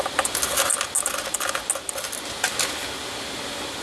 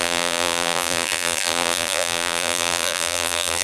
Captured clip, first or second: first